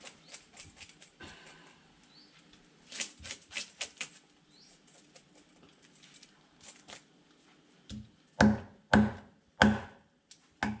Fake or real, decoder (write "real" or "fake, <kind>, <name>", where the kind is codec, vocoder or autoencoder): real